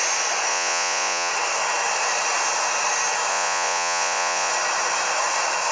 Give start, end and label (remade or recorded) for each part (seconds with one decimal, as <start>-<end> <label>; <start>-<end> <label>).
0.0-0.5 recorded; 0.5-1.3 remade; 1.3-3.3 recorded; 3.3-4.5 remade; 4.5-5.7 recorded